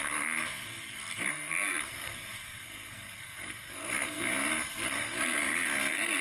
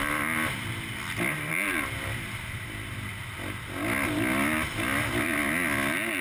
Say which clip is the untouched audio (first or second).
second